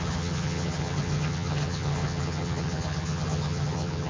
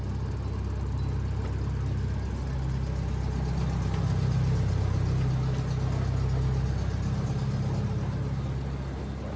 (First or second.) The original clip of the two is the second